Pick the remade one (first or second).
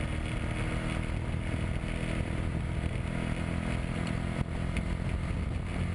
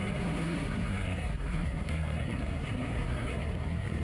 second